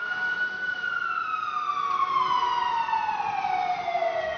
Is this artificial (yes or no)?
no